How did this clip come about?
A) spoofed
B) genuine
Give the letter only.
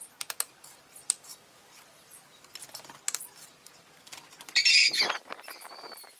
A